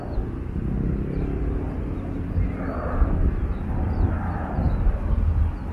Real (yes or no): yes